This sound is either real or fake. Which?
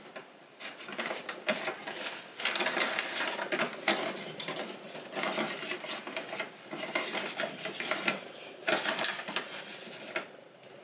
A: real